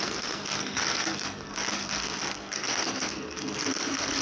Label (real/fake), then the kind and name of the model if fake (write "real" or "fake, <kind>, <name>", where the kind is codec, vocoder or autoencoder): fake, codec, SNAC